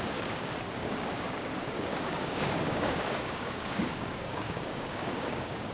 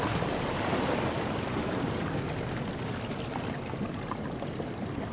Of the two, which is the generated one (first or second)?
first